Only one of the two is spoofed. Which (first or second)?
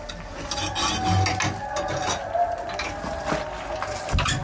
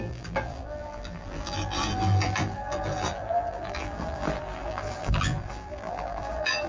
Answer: second